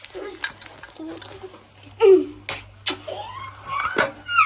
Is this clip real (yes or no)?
yes